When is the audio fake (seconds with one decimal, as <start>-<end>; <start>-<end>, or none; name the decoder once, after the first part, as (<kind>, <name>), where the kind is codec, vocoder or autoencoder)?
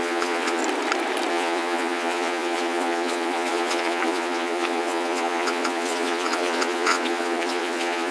0.0-0.6 (vocoder, Vocos); 1.3-8.1